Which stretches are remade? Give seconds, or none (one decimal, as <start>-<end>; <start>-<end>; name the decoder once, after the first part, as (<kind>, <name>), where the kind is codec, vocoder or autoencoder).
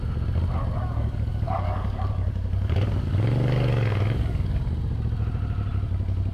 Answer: 0.8-4.6 (codec, DAC)